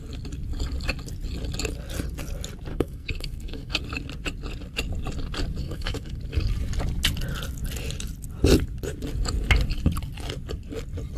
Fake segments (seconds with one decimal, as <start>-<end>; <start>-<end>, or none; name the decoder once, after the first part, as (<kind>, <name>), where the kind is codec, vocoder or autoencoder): 2.7-3.8 (codec, SNAC); 5.6-6.2